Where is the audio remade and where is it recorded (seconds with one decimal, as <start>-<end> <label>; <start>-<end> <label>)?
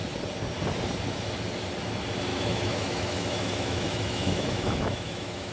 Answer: 0.0-2.3 recorded; 2.3-5.5 remade